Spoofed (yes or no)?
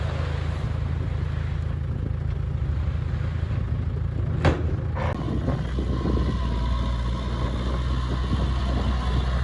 no